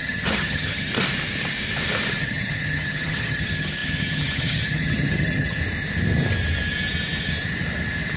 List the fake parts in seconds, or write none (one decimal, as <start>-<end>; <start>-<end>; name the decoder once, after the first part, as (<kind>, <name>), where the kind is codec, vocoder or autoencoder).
0.0-0.9 (vocoder, HiFi-GAN); 2.1-5.6